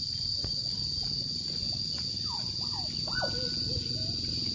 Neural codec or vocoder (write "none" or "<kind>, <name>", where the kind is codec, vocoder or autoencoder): none